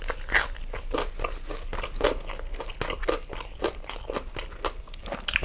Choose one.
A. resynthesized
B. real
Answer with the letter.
B